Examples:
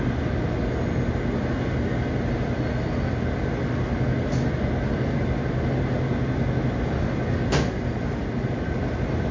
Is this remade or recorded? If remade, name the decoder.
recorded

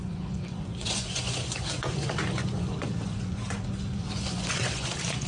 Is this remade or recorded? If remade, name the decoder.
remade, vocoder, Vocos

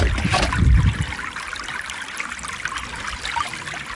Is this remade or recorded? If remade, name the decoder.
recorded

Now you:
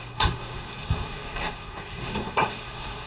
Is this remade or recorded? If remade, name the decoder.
remade, codec, SNAC